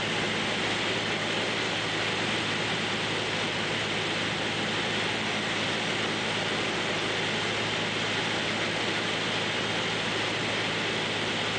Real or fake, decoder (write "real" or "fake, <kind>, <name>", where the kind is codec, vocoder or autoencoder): real